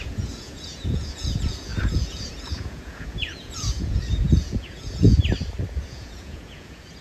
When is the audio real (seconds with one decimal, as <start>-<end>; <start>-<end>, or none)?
5.2-5.8